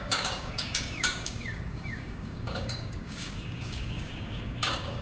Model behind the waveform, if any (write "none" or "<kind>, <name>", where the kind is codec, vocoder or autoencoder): codec, DAC